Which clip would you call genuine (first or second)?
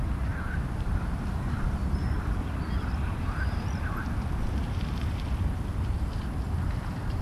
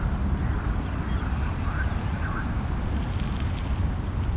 second